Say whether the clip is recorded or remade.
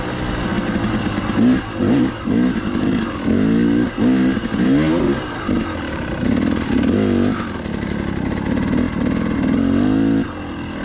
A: recorded